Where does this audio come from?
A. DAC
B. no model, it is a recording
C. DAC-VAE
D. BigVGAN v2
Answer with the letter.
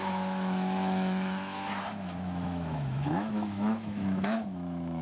C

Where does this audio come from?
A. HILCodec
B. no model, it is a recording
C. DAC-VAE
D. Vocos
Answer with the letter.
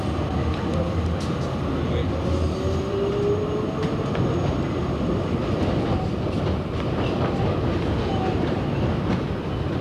B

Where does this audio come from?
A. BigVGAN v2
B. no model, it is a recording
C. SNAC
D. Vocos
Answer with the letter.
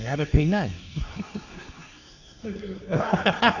C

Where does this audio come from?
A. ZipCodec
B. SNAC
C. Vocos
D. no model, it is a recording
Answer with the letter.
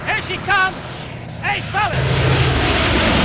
D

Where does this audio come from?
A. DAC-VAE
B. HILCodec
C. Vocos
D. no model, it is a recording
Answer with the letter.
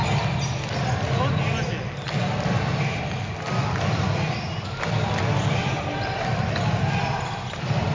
D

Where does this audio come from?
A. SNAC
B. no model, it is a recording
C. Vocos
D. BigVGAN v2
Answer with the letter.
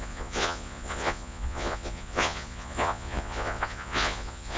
C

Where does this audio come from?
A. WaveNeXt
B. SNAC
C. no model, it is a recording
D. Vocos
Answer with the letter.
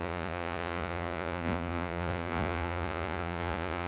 D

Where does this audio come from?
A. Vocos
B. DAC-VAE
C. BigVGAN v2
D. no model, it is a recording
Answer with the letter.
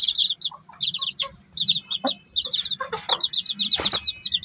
D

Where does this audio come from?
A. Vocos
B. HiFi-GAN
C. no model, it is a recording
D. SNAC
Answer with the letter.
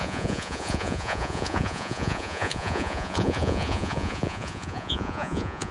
A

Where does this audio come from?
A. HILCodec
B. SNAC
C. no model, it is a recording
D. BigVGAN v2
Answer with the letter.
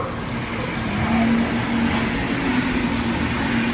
C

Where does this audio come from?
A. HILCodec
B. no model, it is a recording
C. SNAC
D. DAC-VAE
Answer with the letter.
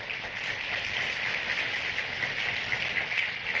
B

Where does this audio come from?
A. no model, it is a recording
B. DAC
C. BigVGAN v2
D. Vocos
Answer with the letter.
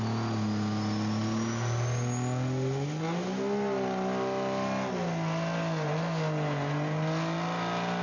A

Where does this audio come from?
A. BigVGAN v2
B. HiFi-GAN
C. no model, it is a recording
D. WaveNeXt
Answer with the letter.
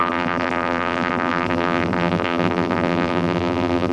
A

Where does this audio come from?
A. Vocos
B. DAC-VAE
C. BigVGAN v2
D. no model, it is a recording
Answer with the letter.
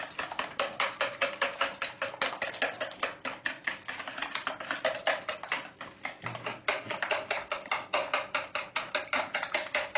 D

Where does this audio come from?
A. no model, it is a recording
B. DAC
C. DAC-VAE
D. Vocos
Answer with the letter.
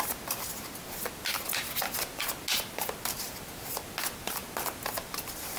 A